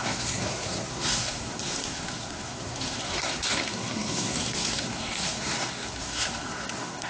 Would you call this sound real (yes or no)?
no